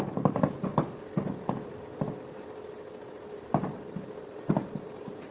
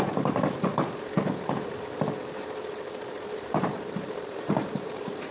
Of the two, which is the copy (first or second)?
second